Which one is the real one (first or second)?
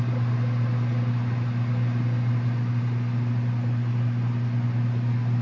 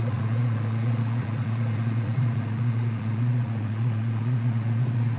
first